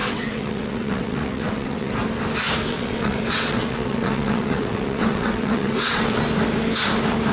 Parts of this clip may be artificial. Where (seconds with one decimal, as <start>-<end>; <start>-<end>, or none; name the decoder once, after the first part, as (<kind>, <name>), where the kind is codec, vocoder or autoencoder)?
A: 0.0-1.9 (vocoder, WaveNeXt); 2.7-6.2